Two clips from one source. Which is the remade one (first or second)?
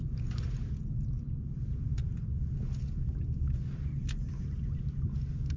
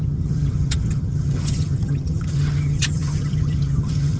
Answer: second